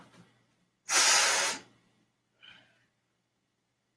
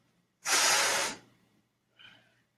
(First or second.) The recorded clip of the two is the first